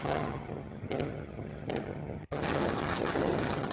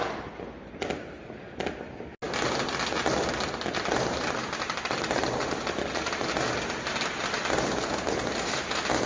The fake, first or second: first